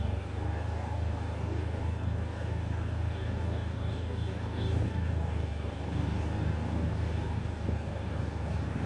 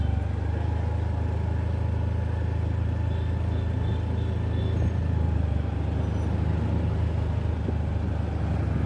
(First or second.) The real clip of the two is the second